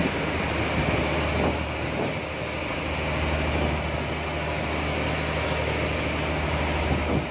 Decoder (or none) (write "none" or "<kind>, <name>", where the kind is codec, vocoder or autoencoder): none